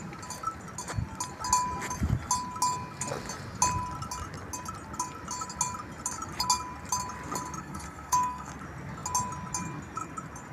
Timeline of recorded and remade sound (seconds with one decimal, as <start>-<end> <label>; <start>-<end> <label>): 0.0-7.6 recorded; 7.6-8.5 remade; 8.5-10.5 recorded

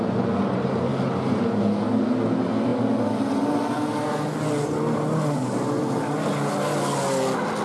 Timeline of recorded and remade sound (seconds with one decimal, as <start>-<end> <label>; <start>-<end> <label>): 0.0-7.6 recorded